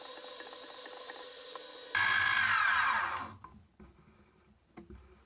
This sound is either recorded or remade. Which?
recorded